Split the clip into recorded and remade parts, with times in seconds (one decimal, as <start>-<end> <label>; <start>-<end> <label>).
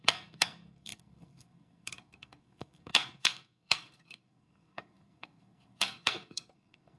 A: 0.0-7.0 remade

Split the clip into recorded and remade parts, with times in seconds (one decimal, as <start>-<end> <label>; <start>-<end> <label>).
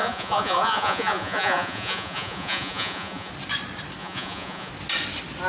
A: 0.0-3.3 remade; 3.3-4.0 recorded; 4.0-4.7 remade; 4.7-5.5 recorded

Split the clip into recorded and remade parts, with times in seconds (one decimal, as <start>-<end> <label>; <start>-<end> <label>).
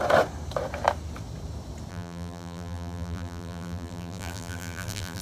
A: 0.0-1.9 recorded; 1.9-5.2 remade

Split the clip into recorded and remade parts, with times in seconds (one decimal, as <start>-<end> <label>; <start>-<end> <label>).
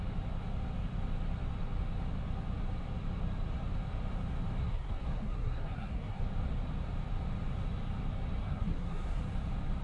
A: 0.0-4.6 recorded; 4.6-6.2 remade; 6.2-8.4 recorded; 8.4-9.2 remade; 9.2-9.8 recorded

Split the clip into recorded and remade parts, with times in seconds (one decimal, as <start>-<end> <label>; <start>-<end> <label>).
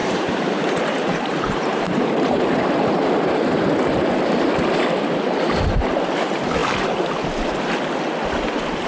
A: 0.0-3.7 remade; 3.7-8.9 recorded